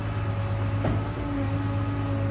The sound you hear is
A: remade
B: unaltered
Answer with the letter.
B